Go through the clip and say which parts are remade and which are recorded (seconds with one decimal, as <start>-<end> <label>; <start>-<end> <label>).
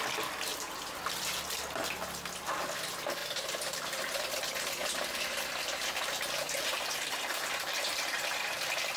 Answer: 0.0-0.5 recorded; 0.5-1.0 remade; 1.0-3.2 recorded; 3.2-4.2 remade; 4.2-4.8 recorded; 4.8-8.6 remade; 8.6-9.0 recorded